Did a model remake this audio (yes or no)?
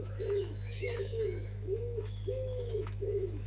yes